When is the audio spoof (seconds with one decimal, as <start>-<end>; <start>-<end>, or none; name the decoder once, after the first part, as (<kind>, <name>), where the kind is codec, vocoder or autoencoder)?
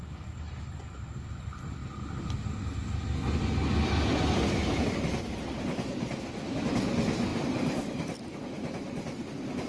none